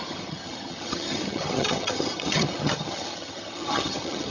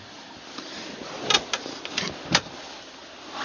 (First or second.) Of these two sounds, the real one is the second